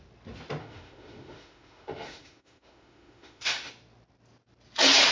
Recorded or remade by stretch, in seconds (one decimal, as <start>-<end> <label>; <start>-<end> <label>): 0.0-0.6 recorded; 0.6-3.7 remade; 3.7-5.1 recorded